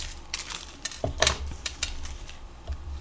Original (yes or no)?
no